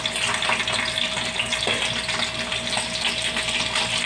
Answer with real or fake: real